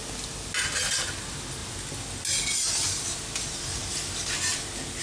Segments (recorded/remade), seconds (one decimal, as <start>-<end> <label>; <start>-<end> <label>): 0.0-5.0 recorded